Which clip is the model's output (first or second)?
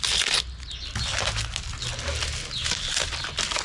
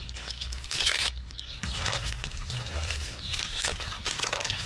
second